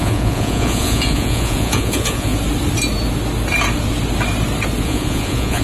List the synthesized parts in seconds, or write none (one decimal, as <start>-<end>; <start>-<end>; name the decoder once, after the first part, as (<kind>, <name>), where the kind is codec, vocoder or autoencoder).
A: 0.0-2.3 (vocoder, Vocos); 4.8-5.6